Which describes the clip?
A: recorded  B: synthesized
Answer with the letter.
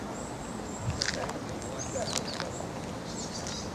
A